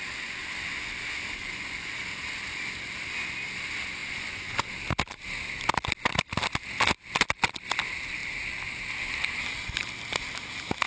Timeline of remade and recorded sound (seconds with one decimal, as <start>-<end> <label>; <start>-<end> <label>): 0.0-1.4 recorded; 1.4-2.0 remade; 2.0-4.0 recorded; 4.0-4.7 remade; 4.7-10.9 recorded